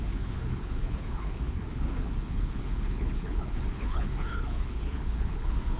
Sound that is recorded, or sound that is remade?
remade